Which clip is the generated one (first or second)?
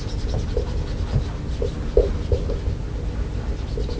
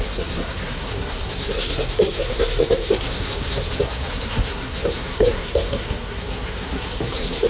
second